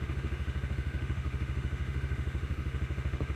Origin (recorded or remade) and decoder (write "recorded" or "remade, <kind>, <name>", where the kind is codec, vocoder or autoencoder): remade, autoencoder, DAC-VAE